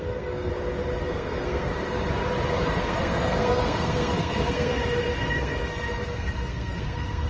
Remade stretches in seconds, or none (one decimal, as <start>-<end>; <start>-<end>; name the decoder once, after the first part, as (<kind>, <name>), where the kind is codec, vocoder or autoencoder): 0.0-0.5 (codec, SNAC); 1.0-1.7; 2.8-4.7; 5.2-7.3